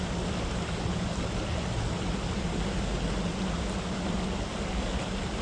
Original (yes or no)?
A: yes